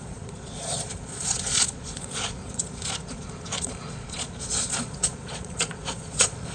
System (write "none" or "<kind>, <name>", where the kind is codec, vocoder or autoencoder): vocoder, Vocos